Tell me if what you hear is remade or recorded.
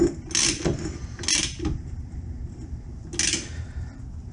recorded